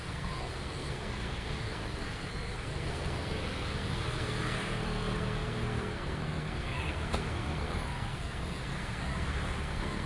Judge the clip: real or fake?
fake